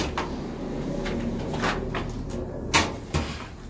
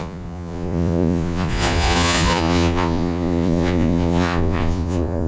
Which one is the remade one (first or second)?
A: second